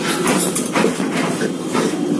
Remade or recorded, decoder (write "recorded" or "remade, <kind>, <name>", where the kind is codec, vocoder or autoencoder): recorded